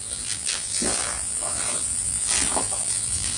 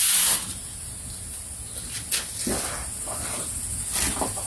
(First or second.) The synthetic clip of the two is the first